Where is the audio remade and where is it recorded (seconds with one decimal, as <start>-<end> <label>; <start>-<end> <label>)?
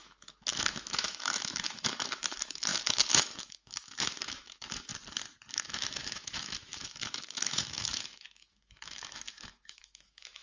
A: 0.0-4.9 remade; 4.9-5.5 recorded; 5.5-10.4 remade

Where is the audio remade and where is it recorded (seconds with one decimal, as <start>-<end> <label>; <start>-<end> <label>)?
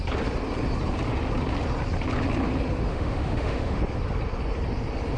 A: 0.0-2.9 recorded; 2.9-3.8 remade; 3.8-5.2 recorded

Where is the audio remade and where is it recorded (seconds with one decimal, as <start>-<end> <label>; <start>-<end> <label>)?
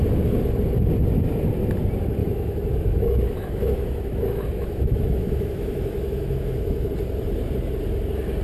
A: 0.0-2.2 recorded; 2.2-6.9 remade; 6.9-8.4 recorded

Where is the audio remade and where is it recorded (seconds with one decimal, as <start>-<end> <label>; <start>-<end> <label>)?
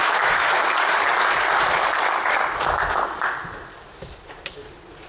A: 0.0-0.6 remade; 0.6-5.1 recorded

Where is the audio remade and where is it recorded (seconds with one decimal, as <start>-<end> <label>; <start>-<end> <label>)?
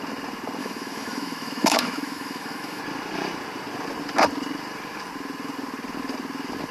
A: 0.0-0.6 recorded; 0.6-2.8 remade; 2.8-6.7 recorded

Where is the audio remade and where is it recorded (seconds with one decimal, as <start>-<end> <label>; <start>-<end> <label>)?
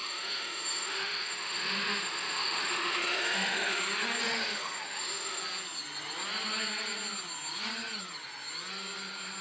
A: 0.0-3.8 remade; 3.8-4.2 recorded; 4.2-5.4 remade; 5.4-9.4 recorded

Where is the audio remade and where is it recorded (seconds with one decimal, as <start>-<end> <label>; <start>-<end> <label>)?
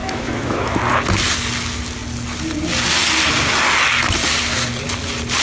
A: 0.0-0.8 remade; 0.8-5.4 recorded